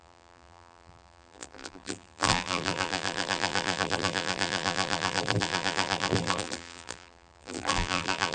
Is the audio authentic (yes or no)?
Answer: no